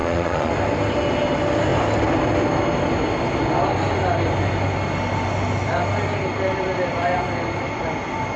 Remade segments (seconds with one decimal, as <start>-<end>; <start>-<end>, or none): 0.0-0.5